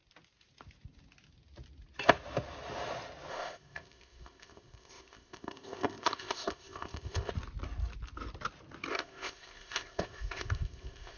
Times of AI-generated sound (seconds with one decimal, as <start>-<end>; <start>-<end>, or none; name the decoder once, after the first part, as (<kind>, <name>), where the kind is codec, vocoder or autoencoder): 3.3-7.3 (codec, ZipCodec); 8.9-11.2